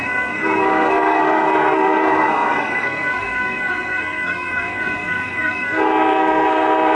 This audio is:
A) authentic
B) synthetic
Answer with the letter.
B